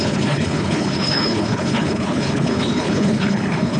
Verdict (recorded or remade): remade